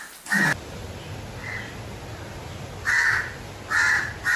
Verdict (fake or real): real